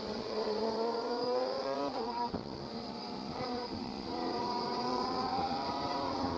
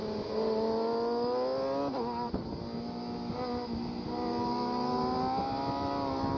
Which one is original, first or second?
second